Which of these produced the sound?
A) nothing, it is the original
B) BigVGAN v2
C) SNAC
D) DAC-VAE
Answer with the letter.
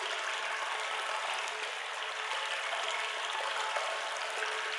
A